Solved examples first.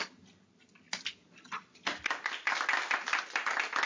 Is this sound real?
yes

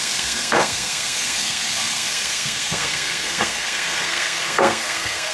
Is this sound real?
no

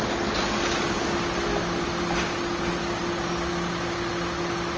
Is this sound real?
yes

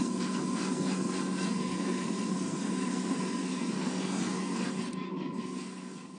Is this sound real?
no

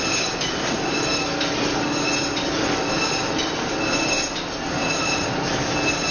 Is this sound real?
yes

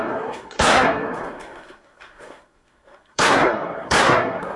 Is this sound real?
no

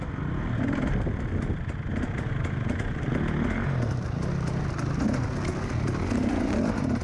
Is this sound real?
yes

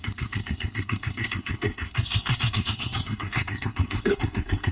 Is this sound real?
no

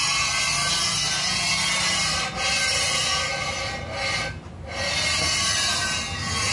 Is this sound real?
yes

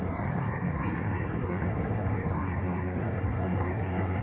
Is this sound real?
no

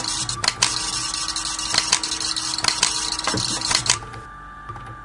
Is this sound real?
yes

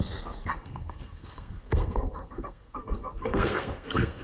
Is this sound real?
no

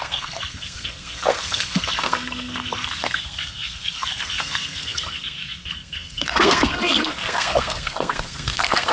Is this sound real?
no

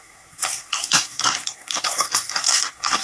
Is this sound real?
no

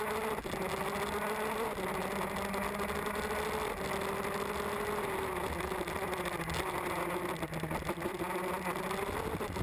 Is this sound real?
yes